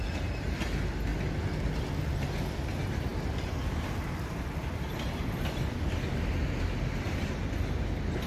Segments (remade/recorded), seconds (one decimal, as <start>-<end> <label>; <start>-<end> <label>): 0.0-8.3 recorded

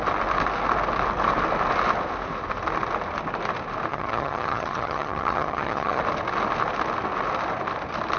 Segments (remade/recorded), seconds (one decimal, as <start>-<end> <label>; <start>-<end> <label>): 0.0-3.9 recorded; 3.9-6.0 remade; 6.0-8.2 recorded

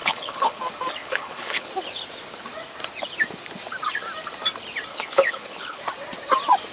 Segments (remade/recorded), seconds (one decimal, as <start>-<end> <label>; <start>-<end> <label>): 0.0-0.6 remade; 0.6-1.0 recorded; 1.0-1.7 remade; 1.7-4.9 recorded; 4.9-5.8 remade; 5.8-6.7 recorded

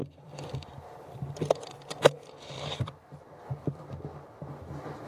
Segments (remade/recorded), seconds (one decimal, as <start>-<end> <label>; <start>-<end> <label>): 0.0-3.1 remade; 3.1-5.1 recorded